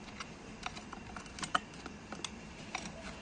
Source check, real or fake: real